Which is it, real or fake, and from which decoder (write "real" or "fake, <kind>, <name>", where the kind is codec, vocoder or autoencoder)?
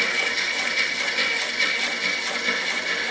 real